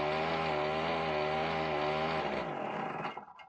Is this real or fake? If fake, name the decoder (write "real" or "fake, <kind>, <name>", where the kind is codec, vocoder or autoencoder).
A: real